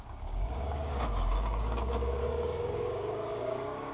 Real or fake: fake